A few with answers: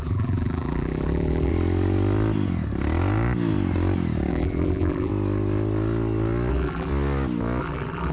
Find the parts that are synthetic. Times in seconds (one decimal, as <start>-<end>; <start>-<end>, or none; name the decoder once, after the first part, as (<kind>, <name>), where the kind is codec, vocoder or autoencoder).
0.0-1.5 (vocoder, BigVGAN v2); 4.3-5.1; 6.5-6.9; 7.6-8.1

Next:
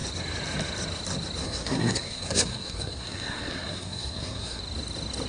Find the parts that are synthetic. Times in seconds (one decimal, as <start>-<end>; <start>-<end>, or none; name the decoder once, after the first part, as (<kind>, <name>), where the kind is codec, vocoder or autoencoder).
1.4-4.6 (codec, SNAC)

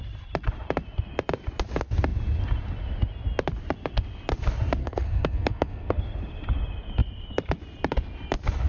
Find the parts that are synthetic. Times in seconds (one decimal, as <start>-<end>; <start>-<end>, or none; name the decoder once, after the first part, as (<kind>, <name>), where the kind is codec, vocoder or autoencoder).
4.8-6.0 (codec, SNAC)

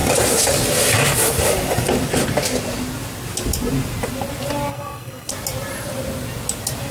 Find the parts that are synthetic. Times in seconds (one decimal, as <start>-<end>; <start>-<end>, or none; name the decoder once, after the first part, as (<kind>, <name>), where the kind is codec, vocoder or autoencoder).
4.7-5.3 (codec, SNAC)

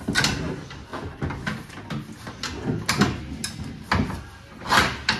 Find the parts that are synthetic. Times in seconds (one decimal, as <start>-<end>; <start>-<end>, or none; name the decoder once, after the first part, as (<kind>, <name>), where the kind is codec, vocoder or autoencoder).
none